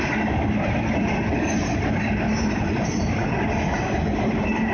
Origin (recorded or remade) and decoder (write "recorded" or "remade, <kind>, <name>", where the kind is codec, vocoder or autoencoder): recorded